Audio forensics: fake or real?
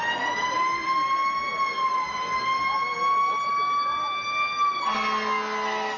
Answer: real